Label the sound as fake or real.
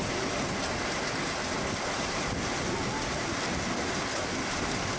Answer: real